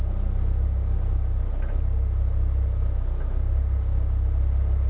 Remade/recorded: recorded